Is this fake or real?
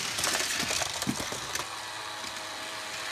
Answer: real